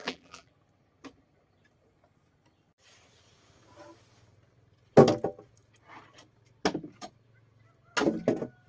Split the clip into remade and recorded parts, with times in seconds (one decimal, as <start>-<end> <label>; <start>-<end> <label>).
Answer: 0.0-0.5 remade; 0.5-8.7 recorded